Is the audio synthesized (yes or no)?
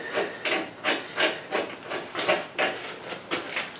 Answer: no